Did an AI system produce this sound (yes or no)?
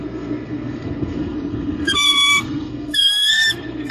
yes